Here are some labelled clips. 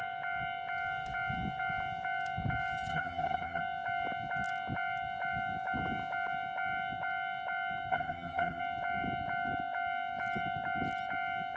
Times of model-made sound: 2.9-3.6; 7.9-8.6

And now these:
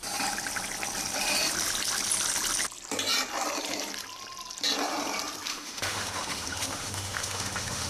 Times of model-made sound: 5.5-7.9

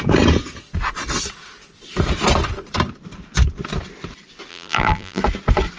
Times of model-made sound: 4.5-5.2

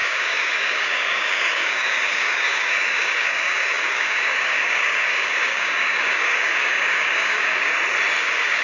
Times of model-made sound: 0.0-7.7; 8.2-8.6

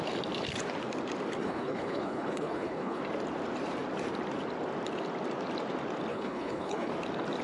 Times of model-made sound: 1.4-3.0; 6.1-6.9

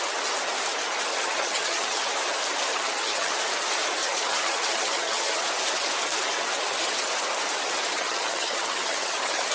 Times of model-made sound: 1.1-2.1; 2.7-3.4; 4.0-5.4; 7.9-9.5

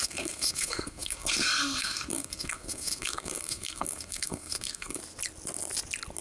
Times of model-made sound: 0.0-5.0

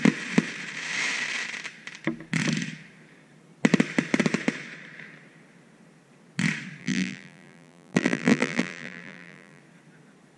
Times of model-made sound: 6.8-9.6